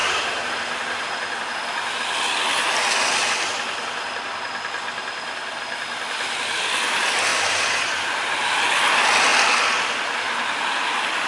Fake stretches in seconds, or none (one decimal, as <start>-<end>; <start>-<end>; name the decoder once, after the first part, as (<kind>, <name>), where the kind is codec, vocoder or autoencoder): 0.0-0.5 (vocoder, BigVGAN v2); 7.3-8.1